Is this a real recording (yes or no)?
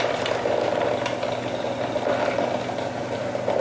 yes